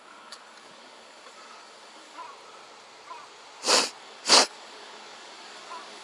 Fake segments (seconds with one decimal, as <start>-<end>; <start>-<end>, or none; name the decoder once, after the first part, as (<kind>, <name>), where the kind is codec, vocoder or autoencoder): 0.0-2.2 (codec, DAC); 4.0-6.0